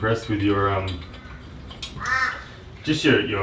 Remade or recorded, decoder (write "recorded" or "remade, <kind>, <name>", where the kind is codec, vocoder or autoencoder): recorded